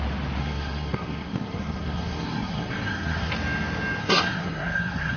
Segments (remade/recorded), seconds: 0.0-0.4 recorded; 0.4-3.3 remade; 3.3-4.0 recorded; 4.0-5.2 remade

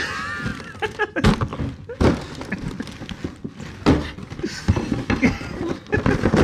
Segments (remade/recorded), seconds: 0.0-0.5 recorded; 0.5-1.1 remade; 1.1-6.4 recorded

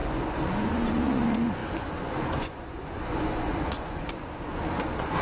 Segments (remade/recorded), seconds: 0.0-5.2 remade

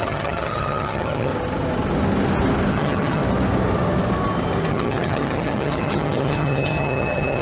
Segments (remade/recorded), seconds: 0.0-1.3 remade; 1.3-2.7 recorded; 2.7-3.2 remade; 3.2-4.7 recorded; 4.7-7.4 remade

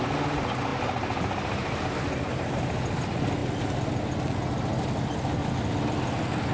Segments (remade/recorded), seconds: 0.0-0.7 recorded; 0.7-2.6 remade; 2.6-6.5 recorded

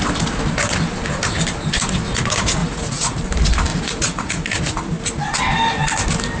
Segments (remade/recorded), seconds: 0.0-2.6 recorded; 2.6-3.2 remade; 3.2-3.7 recorded; 3.7-4.6 remade; 4.6-6.4 recorded